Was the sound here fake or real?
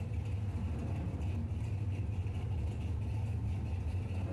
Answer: real